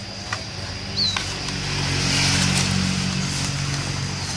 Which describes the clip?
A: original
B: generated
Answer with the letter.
A